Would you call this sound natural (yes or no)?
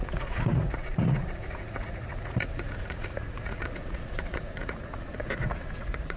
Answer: no